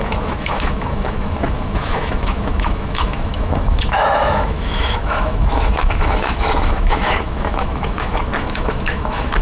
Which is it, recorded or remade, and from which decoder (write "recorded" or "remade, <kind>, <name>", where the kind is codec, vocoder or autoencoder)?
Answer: remade, autoencoder, DAC-VAE